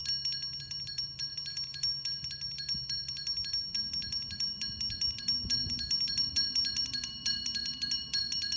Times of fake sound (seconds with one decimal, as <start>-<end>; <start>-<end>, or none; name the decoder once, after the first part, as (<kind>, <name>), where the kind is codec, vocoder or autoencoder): 0.6-8.6 (vocoder, BigVGAN v2)